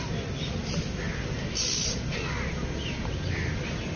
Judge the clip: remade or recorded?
recorded